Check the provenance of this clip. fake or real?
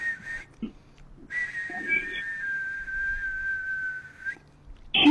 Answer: real